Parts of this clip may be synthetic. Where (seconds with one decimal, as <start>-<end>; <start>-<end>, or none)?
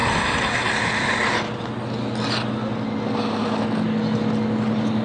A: none